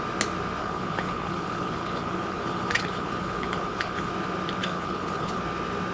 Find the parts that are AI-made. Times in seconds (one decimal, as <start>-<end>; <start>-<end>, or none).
0.6-4.1; 4.6-5.4

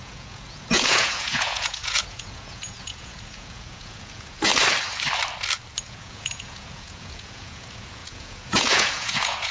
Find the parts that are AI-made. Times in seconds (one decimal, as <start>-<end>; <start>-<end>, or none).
0.0-4.5; 5.8-9.5

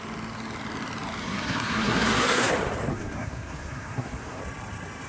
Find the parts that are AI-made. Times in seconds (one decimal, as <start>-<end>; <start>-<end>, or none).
1.2-2.5; 2.9-4.4